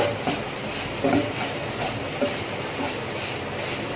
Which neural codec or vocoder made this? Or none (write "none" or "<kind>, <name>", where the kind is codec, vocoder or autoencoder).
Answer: none